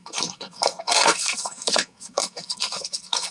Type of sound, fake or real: fake